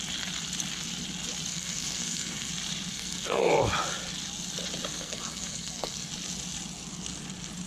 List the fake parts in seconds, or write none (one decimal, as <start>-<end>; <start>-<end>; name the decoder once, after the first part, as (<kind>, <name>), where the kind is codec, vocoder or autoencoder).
1.5-2.5 (codec, SNAC); 2.9-3.5; 4.9-6.1